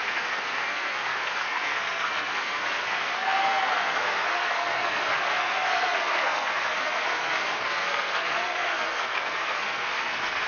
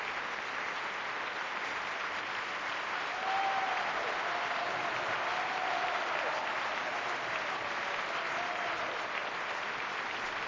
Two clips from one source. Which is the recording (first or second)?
second